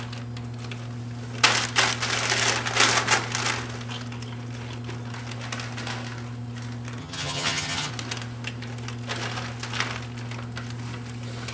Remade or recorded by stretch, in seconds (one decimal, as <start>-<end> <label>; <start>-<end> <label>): 0.0-7.0 recorded; 7.0-7.9 remade; 7.9-11.5 recorded